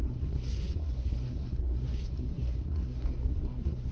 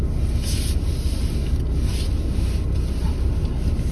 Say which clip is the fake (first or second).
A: first